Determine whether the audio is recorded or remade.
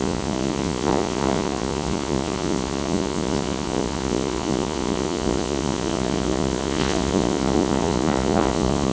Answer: remade